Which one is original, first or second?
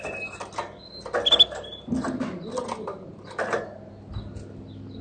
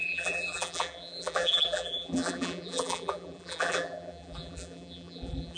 first